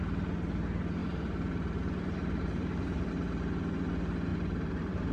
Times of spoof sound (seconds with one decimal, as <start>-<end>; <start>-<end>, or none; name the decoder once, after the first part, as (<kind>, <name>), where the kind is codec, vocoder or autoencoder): 1.0-3.1 (vocoder, BigVGAN v2); 4.3-5.1